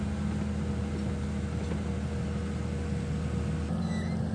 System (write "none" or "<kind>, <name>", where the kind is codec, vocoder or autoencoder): none